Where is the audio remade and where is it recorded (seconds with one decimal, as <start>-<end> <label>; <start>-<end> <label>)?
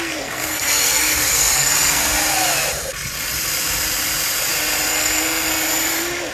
0.0-2.0 remade; 2.0-4.9 recorded; 4.9-5.5 remade; 5.5-6.3 recorded